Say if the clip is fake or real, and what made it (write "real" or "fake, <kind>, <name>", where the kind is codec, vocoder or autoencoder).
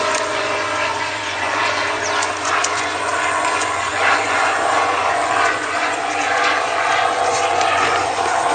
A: fake, vocoder, Vocos